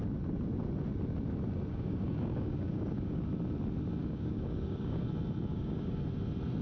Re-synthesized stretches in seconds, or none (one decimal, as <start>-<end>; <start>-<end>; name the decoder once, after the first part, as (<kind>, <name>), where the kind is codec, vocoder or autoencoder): 1.7-3.2 (codec, DAC); 4.0-5.1; 5.5-6.0